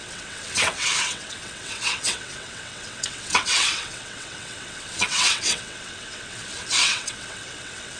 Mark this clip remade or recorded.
remade